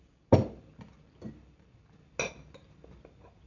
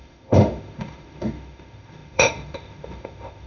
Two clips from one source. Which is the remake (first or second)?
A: second